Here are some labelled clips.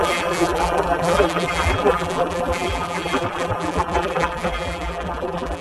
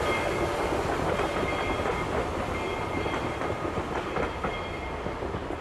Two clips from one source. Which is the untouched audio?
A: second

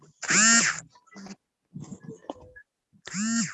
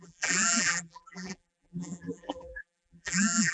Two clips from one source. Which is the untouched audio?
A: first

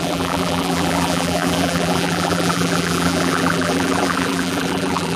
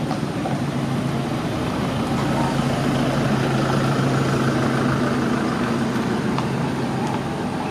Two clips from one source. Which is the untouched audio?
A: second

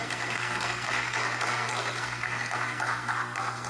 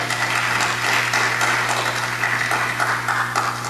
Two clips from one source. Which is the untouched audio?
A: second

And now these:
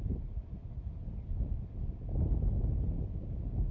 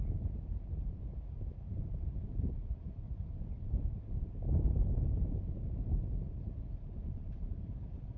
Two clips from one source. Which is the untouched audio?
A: first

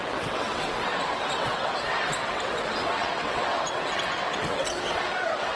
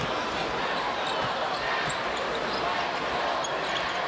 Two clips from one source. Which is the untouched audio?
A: second